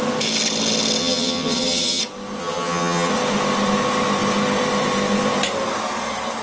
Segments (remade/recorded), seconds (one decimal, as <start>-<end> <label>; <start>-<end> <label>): 0.0-1.0 recorded; 1.0-2.0 remade; 2.0-2.4 recorded; 2.4-3.1 remade; 3.1-6.4 recorded